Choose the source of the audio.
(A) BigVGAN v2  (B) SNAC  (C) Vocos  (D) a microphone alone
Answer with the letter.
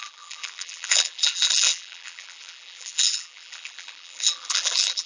A